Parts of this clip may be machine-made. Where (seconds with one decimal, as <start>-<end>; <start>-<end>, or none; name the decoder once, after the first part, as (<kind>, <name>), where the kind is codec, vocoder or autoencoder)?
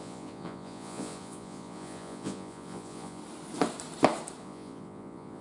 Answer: 0.0-3.2 (vocoder, Vocos); 4.4-5.4